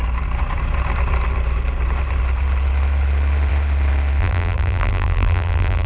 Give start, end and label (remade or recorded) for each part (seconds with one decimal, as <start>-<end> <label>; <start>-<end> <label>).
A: 0.0-4.2 recorded; 4.2-5.9 remade